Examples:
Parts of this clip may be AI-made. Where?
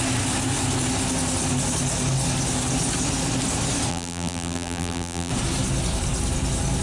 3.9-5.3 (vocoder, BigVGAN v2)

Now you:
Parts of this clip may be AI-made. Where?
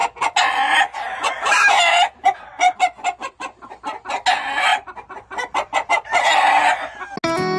none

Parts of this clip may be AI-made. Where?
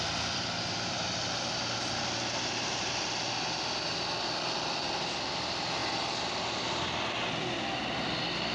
0.0-5.8 (vocoder, BigVGAN v2); 7.3-8.5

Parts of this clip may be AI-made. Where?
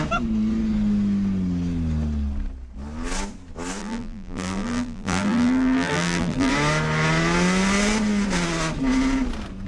3.8-6.5 (vocoder, BigVGAN v2)